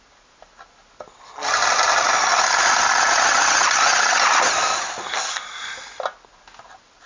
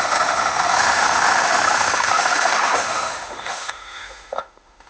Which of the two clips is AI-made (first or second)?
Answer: second